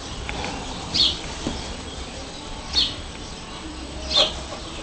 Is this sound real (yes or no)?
yes